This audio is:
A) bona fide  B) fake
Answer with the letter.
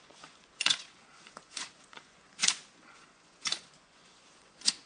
B